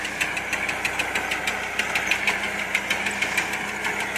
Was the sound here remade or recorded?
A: recorded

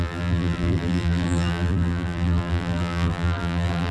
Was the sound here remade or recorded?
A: remade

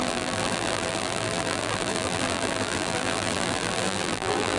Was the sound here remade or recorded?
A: remade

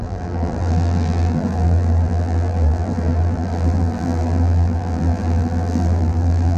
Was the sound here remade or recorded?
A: remade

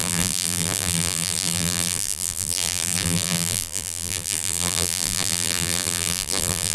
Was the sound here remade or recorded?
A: remade